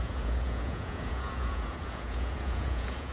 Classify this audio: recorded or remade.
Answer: remade